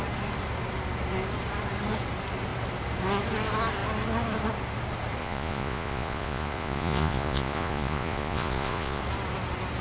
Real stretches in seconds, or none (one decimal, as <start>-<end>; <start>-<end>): 0.0-5.2; 9.0-9.8